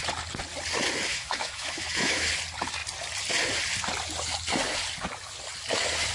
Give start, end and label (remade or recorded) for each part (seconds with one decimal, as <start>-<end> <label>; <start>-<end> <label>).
0.0-1.1 recorded; 1.1-2.3 remade; 2.3-6.1 recorded